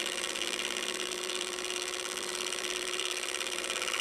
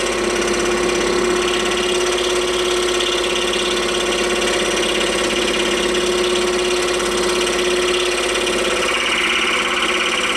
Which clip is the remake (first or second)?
first